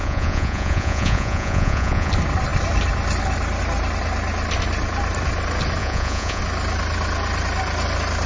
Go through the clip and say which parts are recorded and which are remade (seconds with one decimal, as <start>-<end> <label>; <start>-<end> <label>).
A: 0.0-2.1 remade; 2.1-5.8 recorded; 5.8-6.4 remade; 6.4-8.3 recorded